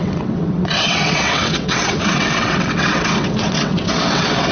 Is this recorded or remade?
remade